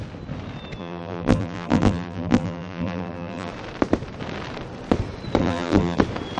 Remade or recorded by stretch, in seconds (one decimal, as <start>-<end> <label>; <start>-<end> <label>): 0.0-0.8 recorded; 0.8-3.5 remade; 3.5-5.4 recorded; 5.4-6.0 remade; 6.0-6.4 recorded